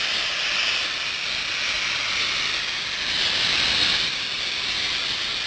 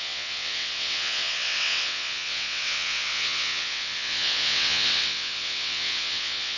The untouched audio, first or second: first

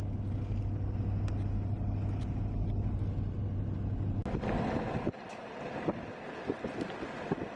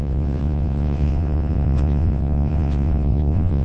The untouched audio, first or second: first